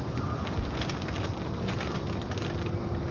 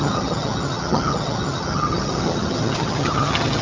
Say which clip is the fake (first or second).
second